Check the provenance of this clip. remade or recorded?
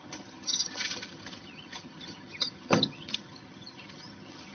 remade